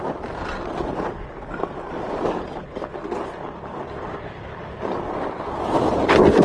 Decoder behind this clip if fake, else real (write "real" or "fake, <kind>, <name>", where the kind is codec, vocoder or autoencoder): real